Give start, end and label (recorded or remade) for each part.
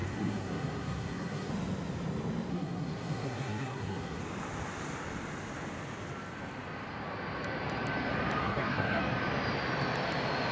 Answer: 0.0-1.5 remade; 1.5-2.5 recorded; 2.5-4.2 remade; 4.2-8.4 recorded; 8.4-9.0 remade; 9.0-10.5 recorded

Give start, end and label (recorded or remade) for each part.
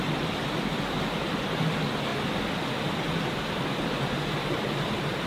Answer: 0.0-5.3 recorded